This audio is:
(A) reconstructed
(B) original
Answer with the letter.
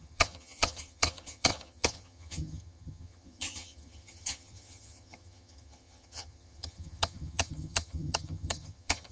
A